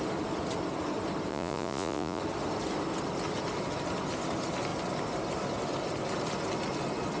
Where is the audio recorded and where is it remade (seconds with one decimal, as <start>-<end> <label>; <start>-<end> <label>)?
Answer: 0.0-1.3 recorded; 1.3-2.2 remade; 2.2-7.2 recorded